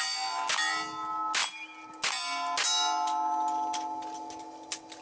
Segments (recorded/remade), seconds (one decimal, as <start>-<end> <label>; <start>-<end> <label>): 0.0-5.0 recorded